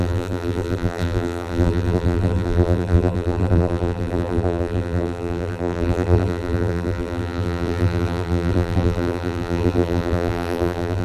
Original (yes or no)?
no